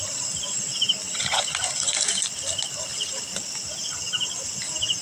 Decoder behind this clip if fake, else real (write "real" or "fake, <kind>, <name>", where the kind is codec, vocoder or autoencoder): real